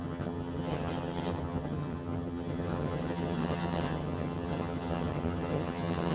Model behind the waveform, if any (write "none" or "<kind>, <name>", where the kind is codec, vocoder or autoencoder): vocoder, HiFi-GAN